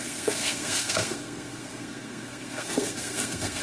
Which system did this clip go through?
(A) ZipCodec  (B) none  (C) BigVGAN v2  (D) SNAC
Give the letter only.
D